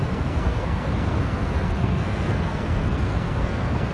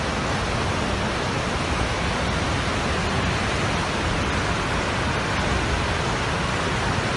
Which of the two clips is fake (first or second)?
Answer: first